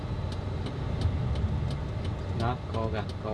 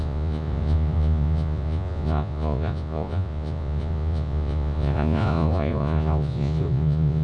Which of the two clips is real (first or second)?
first